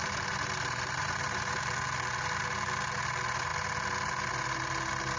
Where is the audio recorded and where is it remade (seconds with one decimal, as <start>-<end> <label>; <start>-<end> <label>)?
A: 0.0-1.6 remade; 1.6-5.2 recorded